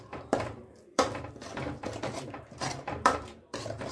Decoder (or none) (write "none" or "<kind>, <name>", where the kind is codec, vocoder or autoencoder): vocoder, BigVGAN v2